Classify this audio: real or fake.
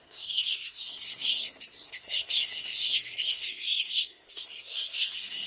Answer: fake